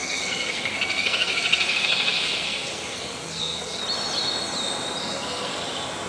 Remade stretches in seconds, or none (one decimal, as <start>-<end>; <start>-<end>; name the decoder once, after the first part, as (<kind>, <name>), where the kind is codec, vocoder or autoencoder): 0.0-3.8 (codec, SNAC); 5.0-5.6